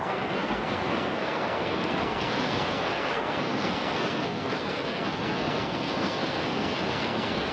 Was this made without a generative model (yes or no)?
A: no